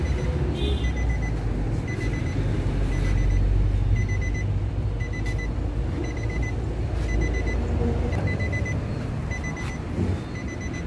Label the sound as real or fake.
real